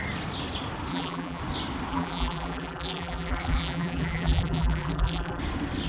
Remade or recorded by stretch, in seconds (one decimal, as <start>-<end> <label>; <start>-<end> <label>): 0.0-0.9 recorded; 0.9-1.4 remade; 1.4-1.9 recorded; 1.9-5.4 remade; 5.4-5.9 recorded